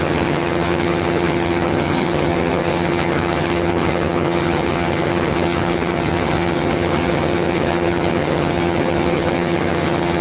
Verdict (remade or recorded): remade